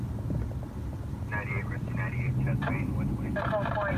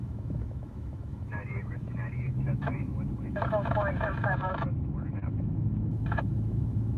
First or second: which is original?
first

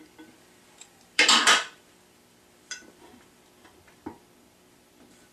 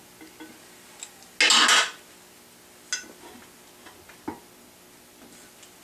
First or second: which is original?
second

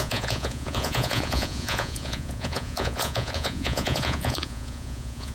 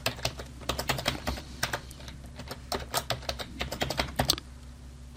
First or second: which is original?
second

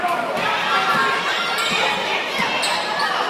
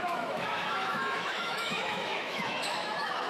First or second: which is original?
first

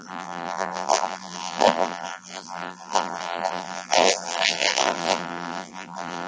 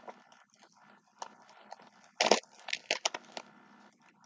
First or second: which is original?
second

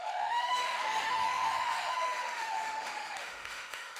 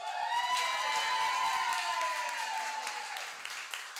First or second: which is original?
second